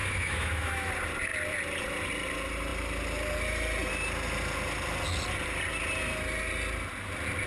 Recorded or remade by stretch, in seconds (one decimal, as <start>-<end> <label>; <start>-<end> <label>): 0.0-0.9 remade; 0.9-7.5 recorded

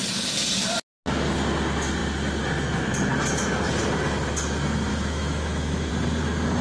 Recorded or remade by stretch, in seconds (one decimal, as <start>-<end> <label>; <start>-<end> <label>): 0.0-4.9 recorded; 4.9-5.9 remade; 5.9-6.6 recorded

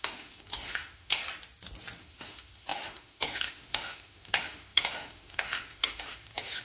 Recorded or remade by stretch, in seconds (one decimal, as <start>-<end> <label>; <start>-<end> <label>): 0.0-1.2 remade; 1.2-2.0 recorded; 2.0-6.6 remade

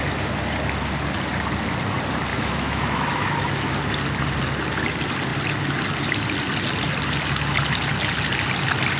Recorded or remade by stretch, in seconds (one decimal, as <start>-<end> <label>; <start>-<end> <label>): 0.0-2.3 recorded; 2.3-3.7 remade; 3.7-9.0 recorded